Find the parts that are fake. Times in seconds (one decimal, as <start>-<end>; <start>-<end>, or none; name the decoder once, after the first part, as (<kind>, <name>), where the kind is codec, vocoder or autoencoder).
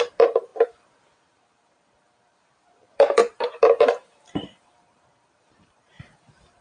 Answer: 0.0-6.6 (vocoder, BigVGAN v2)